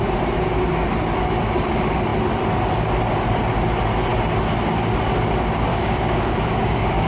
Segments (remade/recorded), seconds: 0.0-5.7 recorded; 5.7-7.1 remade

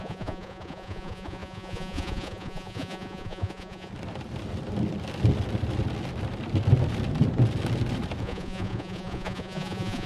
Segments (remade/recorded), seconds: 0.0-3.9 remade; 3.9-8.2 recorded; 8.2-10.1 remade

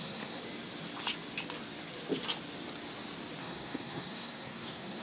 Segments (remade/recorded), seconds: 0.0-0.4 remade; 0.4-3.4 recorded; 3.4-5.0 remade

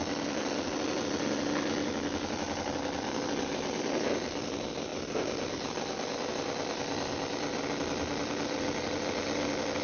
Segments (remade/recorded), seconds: 0.0-9.8 recorded

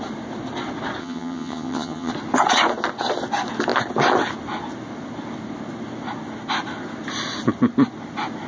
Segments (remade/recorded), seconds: 0.0-1.0 recorded; 1.0-2.1 remade; 2.1-8.5 recorded

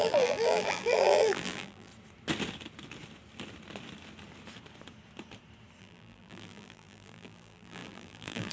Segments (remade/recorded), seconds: 0.0-1.9 remade; 1.9-5.8 recorded; 5.8-8.5 remade

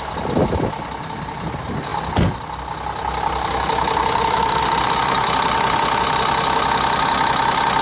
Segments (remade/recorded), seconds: 0.0-7.8 recorded